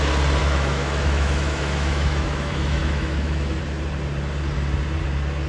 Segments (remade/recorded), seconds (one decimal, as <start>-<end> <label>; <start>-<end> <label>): 0.0-0.4 recorded; 0.4-3.6 remade; 3.6-5.5 recorded